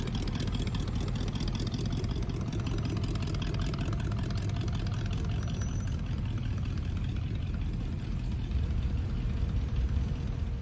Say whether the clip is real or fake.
fake